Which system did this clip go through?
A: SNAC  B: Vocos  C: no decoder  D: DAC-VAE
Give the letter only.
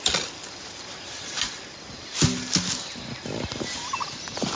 C